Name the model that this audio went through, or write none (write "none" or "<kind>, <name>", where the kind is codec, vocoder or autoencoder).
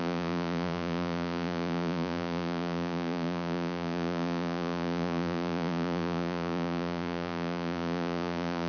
vocoder, Vocos